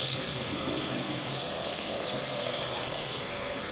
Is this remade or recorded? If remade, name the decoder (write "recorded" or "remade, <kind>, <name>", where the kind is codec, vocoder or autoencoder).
remade, codec, SNAC